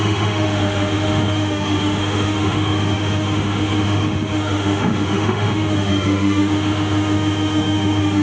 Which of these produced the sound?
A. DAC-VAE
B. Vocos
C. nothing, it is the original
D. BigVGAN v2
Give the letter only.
A